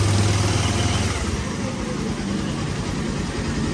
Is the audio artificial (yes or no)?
no